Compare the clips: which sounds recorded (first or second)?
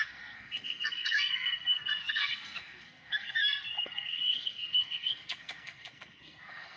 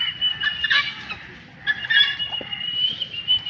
second